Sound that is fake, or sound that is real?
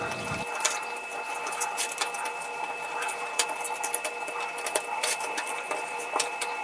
fake